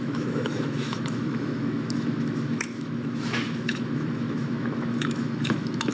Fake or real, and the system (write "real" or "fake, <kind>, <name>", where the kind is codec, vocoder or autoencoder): fake, autoencoder, DAC-VAE